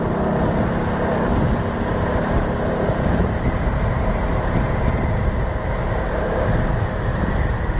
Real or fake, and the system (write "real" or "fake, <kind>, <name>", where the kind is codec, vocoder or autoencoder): real